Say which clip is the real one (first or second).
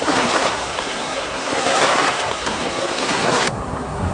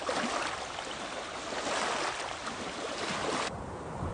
second